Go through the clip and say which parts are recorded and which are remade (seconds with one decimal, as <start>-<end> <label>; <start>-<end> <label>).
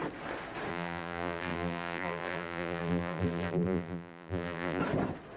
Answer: 0.0-0.7 recorded; 0.7-4.8 remade; 4.8-5.4 recorded